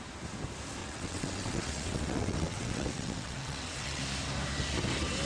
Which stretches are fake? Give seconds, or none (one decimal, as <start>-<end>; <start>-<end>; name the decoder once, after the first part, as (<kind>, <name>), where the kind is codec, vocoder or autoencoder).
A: 0.8-4.0 (vocoder, WaveNeXt)